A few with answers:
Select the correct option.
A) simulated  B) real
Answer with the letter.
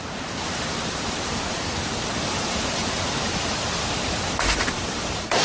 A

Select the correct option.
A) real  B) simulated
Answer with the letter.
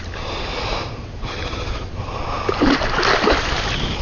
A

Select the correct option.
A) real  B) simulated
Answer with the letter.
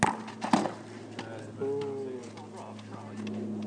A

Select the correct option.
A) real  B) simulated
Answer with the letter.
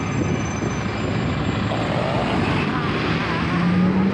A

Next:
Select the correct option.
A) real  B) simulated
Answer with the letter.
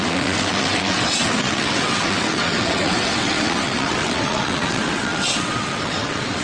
B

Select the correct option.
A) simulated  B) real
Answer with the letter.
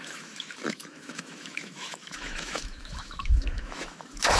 A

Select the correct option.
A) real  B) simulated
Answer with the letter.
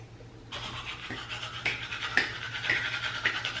A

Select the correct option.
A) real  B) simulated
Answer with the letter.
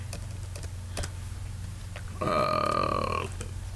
A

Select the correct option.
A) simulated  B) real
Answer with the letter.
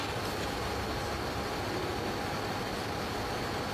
B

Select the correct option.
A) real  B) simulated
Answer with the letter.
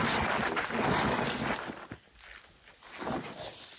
A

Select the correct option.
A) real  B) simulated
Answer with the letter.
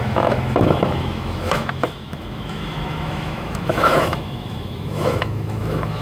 B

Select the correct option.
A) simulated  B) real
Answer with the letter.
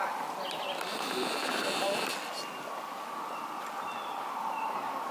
B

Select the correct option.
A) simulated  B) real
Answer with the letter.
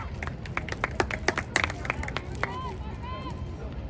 B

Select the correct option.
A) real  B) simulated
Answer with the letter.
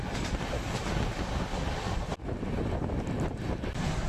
A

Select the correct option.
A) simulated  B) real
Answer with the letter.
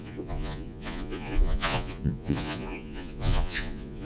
A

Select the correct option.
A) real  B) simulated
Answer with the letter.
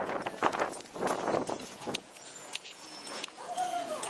B